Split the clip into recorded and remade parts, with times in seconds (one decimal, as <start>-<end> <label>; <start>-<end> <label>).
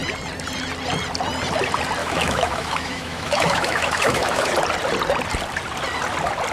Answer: 0.0-2.0 recorded; 2.0-4.5 remade; 4.5-6.5 recorded